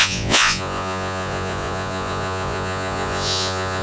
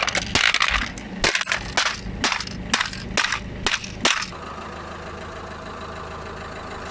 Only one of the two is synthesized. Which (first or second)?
first